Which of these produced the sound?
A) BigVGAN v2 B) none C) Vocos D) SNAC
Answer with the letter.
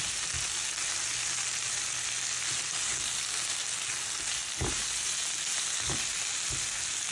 B